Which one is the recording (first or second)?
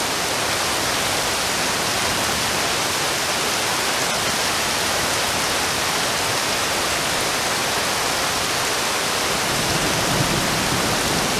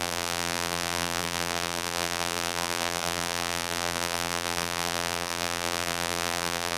first